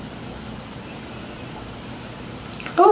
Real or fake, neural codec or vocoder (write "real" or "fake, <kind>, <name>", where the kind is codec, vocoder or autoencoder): real